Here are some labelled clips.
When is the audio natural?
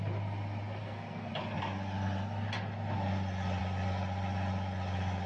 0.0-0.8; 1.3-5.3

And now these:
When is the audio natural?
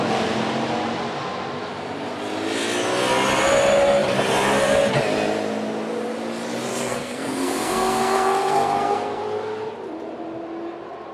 0.0-6.7; 9.2-11.1